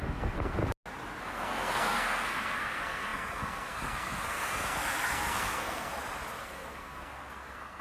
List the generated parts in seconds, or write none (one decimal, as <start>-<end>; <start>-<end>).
0.0-0.6; 1.2-5.9; 6.4-7.8